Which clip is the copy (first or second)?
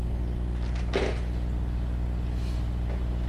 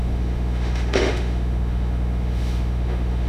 second